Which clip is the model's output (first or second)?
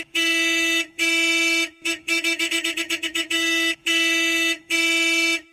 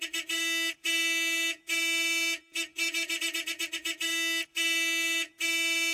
first